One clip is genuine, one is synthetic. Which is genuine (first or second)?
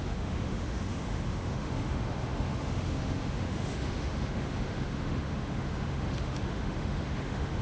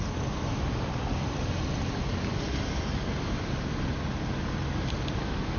second